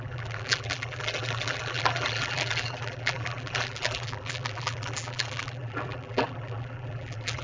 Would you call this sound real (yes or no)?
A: no